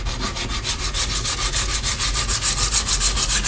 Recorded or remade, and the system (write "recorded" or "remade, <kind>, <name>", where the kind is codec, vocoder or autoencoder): recorded